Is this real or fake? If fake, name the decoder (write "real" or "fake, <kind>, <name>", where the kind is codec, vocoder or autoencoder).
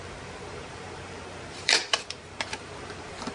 fake, vocoder, BigVGAN v2